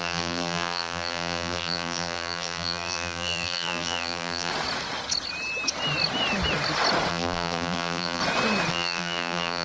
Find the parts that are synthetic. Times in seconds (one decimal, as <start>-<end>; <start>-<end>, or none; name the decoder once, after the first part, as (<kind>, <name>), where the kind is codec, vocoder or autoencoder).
0.0-4.5 (vocoder, BigVGAN v2); 7.1-8.2; 8.7-9.6